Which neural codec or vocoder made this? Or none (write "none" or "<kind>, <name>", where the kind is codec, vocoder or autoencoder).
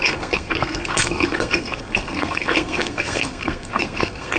codec, SNAC